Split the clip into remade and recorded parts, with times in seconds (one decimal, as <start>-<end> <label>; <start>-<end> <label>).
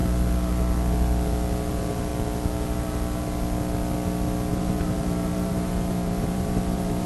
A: 0.0-1.7 recorded; 1.7-2.1 remade; 2.1-4.5 recorded; 4.5-7.1 remade